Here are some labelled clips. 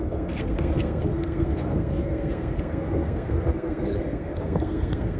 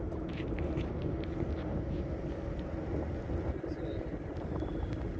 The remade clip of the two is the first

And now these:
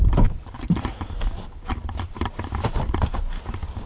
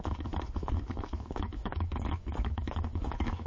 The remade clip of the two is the second